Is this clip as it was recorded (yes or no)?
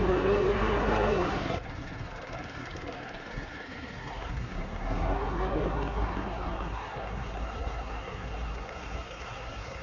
no